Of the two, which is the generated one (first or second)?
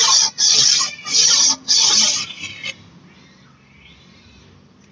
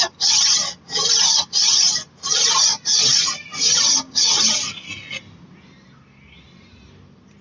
first